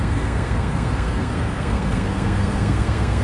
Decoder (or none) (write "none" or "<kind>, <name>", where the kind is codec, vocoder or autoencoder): codec, SNAC